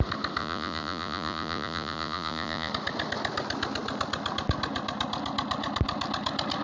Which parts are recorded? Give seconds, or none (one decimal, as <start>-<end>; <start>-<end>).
0.0-0.4; 2.7-6.6